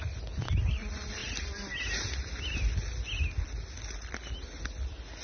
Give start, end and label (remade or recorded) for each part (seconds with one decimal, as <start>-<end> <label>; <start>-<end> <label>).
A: 0.0-5.2 recorded